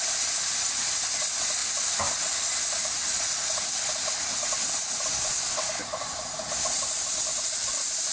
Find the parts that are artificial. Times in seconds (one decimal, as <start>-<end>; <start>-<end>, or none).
none